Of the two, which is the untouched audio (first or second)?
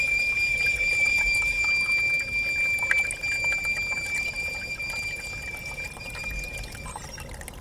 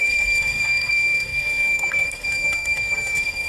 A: first